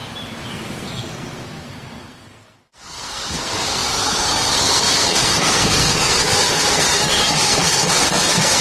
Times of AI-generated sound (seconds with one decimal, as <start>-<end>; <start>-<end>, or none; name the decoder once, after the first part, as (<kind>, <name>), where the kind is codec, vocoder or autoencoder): 0.5-8.6 (codec, SNAC)